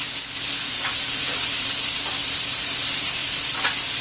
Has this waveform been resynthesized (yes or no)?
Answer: yes